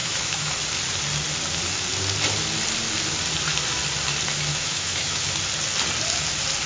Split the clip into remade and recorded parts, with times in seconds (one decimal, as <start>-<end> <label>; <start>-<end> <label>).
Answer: 0.0-0.5 remade; 0.5-4.5 recorded; 4.5-5.2 remade; 5.2-6.7 recorded